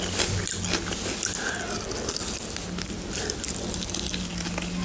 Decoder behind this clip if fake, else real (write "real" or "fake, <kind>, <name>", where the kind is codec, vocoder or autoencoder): real